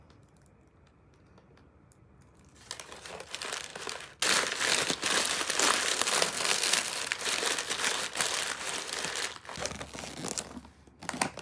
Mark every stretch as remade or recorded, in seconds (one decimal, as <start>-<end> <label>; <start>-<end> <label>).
0.0-5.9 recorded; 5.9-6.9 remade; 6.9-11.4 recorded